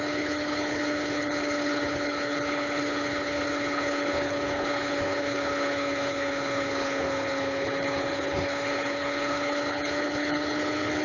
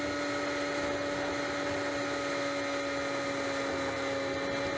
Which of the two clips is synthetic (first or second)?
first